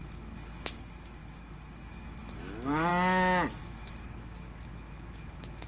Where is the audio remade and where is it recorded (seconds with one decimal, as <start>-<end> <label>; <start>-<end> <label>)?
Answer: 0.0-2.9 remade; 2.9-3.6 recorded; 3.6-5.7 remade